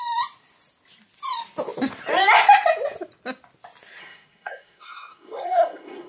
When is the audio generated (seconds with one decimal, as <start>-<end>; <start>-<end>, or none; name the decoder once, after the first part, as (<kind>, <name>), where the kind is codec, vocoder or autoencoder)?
4.0-6.1 (codec, SNAC)